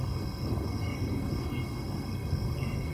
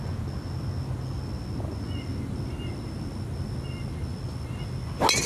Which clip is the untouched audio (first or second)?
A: second